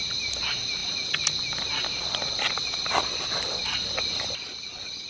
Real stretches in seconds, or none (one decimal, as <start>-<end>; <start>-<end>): 0.0-5.1